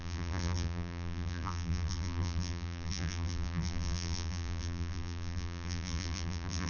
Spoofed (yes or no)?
yes